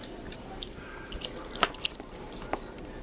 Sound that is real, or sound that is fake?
fake